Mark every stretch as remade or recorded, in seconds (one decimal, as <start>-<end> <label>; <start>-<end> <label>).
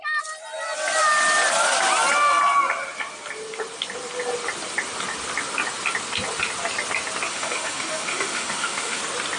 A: 0.0-7.3 recorded; 7.3-9.0 remade; 9.0-9.4 recorded